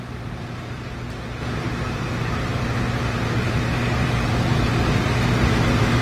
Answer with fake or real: fake